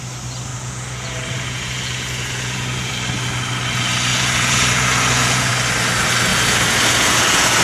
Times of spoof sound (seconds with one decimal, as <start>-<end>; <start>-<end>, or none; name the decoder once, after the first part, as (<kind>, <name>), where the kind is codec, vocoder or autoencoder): 0.5-2.9 (vocoder, Vocos); 4.1-5.5; 6.3-7.6